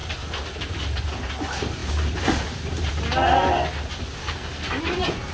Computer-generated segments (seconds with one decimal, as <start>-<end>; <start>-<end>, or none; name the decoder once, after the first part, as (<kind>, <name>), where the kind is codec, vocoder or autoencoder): 4.2-4.8 (codec, SNAC)